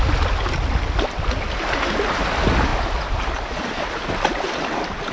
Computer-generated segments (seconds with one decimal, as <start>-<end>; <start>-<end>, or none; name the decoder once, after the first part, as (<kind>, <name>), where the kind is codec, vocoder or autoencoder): none